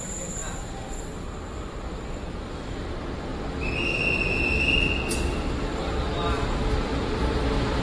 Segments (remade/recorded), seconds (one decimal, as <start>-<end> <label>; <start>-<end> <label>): 0.0-3.3 remade; 3.3-4.5 recorded; 4.5-7.8 remade